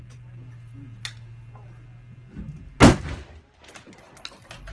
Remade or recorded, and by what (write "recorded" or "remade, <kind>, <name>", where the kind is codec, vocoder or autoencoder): recorded